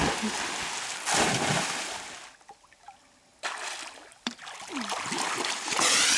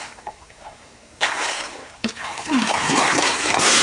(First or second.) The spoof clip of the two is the second